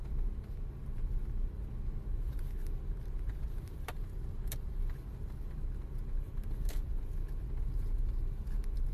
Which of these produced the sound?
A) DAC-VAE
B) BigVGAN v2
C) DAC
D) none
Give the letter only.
D